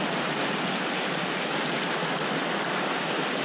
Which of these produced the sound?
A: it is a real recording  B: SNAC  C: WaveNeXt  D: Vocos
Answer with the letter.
A